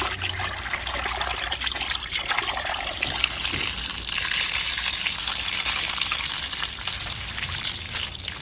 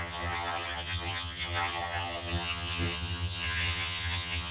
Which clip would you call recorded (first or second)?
first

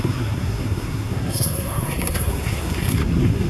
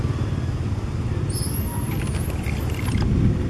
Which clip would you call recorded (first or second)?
second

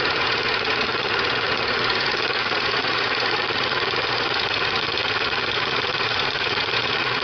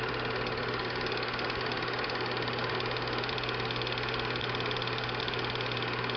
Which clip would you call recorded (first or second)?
second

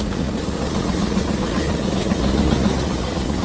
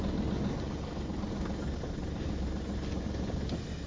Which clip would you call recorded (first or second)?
second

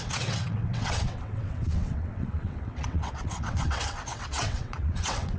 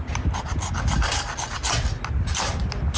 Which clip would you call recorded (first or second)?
second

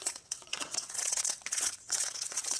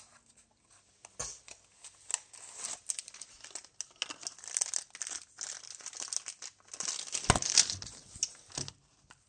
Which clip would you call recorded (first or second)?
second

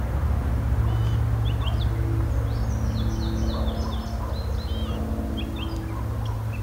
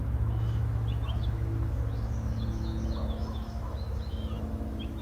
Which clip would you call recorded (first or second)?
first